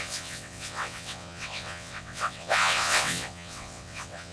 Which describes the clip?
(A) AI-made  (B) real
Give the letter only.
A